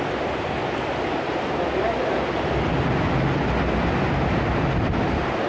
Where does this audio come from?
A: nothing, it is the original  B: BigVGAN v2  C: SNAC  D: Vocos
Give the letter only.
A